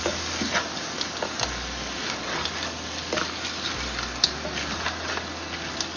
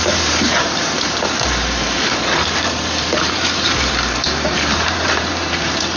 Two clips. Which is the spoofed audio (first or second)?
second